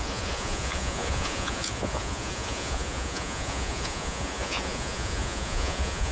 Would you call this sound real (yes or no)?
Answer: no